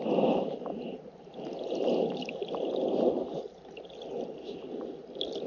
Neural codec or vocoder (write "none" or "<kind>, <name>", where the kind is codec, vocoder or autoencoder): none